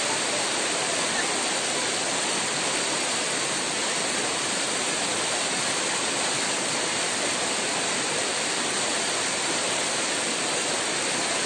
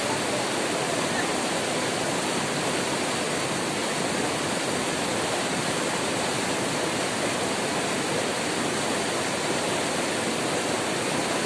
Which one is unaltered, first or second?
second